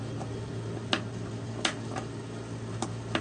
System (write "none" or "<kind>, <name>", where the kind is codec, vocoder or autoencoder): none